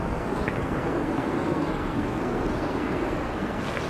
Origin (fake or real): fake